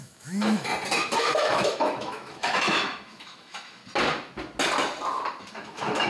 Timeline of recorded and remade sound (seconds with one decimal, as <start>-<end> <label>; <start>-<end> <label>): 0.0-0.7 remade; 0.7-1.2 recorded; 1.2-3.8 remade; 3.8-5.5 recorded; 5.5-6.1 remade